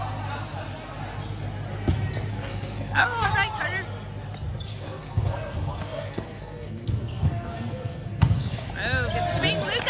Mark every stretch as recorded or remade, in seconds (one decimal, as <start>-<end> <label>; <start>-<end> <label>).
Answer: 0.0-2.3 recorded; 2.3-3.3 remade; 3.3-4.7 recorded; 4.7-8.7 remade; 8.7-9.9 recorded